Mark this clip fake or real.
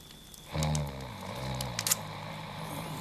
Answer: real